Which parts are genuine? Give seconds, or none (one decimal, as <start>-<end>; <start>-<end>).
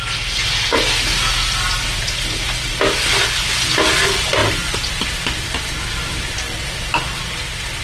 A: 0.0-7.8